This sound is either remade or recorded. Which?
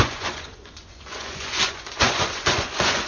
remade